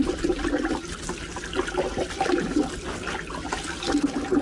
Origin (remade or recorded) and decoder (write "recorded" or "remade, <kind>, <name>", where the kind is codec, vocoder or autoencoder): recorded